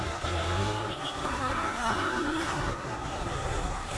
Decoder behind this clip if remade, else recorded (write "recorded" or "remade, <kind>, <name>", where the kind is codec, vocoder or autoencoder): remade, codec, SNAC